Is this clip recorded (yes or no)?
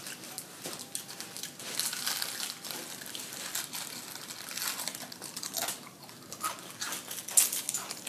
yes